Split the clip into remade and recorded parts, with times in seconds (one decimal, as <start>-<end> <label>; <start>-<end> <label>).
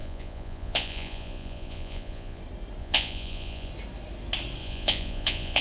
0.0-2.4 remade; 2.4-2.8 recorded; 2.8-3.7 remade; 3.7-4.6 recorded; 4.6-5.6 remade